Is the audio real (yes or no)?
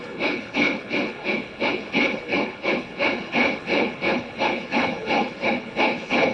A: no